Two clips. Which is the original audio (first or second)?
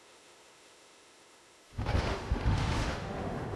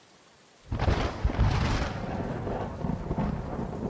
second